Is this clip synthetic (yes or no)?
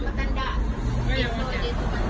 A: no